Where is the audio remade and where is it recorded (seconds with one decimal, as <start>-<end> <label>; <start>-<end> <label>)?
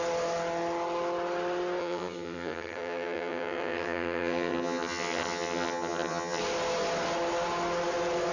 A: 0.0-1.8 recorded; 1.8-6.4 remade; 6.4-8.3 recorded